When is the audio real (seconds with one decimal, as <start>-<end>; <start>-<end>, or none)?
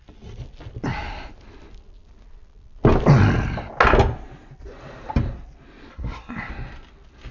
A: 0.0-5.9; 6.5-7.3